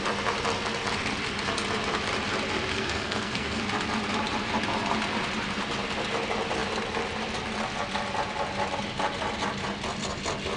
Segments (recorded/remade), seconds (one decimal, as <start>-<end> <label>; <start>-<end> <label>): 0.0-2.7 recorded; 2.7-3.6 remade; 3.6-10.6 recorded